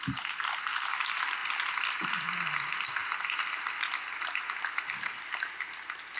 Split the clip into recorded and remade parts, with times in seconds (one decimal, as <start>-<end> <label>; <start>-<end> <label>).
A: 0.0-6.2 recorded